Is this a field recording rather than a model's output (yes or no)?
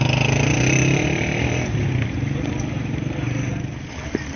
yes